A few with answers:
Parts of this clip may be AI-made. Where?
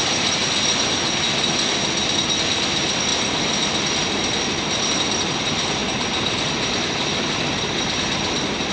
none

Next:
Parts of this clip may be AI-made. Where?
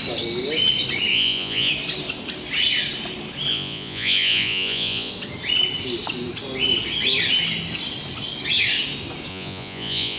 1.1-1.7 (vocoder, Vocos); 3.5-5.1; 9.3-10.2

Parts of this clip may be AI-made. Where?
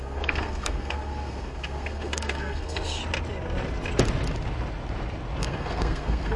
0.0-3.0 (codec, SNAC); 5.4-6.4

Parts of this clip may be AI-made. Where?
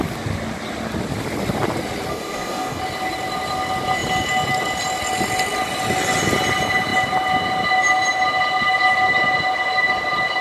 2.1-2.8 (codec, DAC)